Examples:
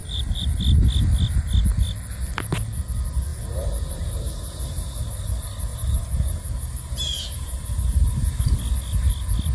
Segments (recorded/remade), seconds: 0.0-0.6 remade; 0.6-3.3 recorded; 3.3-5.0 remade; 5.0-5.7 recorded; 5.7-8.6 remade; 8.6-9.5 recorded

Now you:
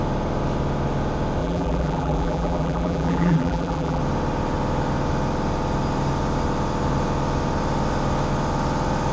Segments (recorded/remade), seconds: 0.0-1.4 recorded; 1.4-4.0 remade; 4.0-9.1 recorded